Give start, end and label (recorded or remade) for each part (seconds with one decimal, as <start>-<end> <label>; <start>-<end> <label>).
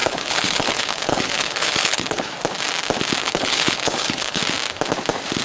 0.0-2.3 remade; 2.3-3.2 recorded; 3.2-4.4 remade; 4.4-5.4 recorded